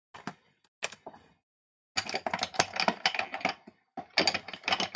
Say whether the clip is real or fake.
real